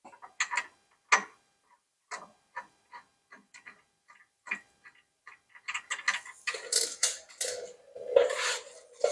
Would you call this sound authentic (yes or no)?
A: yes